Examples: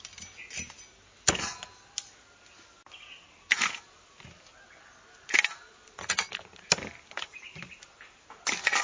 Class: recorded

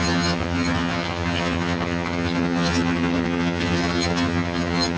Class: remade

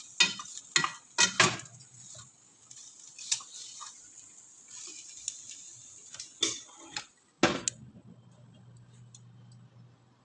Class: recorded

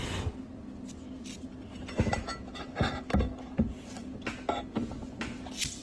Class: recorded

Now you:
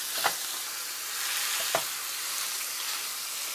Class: recorded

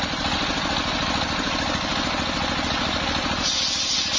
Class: recorded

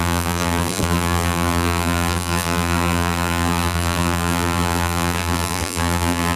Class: remade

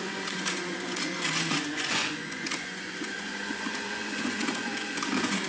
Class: remade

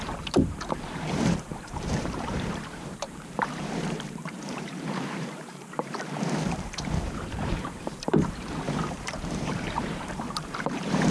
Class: remade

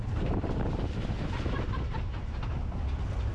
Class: recorded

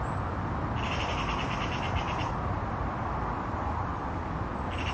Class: recorded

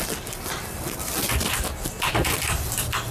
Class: recorded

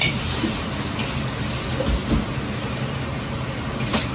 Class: recorded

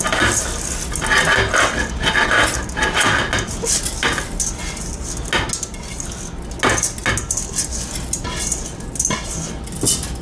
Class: recorded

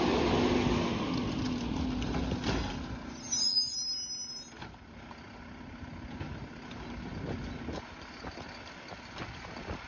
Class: recorded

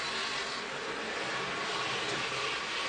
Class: recorded